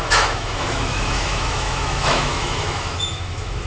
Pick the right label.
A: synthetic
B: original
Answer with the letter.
A